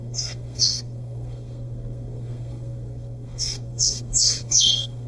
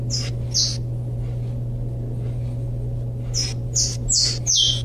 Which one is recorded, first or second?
second